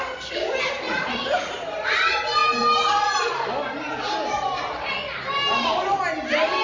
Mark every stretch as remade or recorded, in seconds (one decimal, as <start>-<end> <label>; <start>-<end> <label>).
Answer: 0.0-6.6 recorded